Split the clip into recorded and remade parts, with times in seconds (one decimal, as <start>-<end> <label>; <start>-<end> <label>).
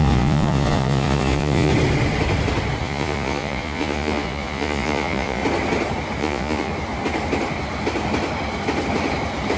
0.0-1.7 remade; 1.7-2.8 recorded; 2.8-5.4 remade; 5.4-6.2 recorded; 6.2-6.7 remade; 6.7-9.6 recorded